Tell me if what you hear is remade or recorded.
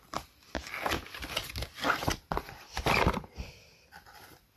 recorded